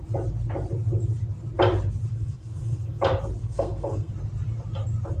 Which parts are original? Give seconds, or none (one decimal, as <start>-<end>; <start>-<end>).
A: 0.0-2.1; 3.0-3.4; 4.1-5.2